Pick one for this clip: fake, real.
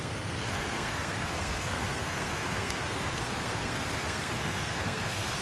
fake